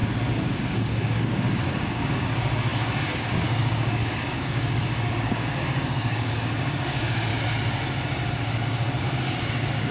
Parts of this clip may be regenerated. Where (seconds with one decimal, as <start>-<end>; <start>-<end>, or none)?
0.6-7.3; 9.0-9.9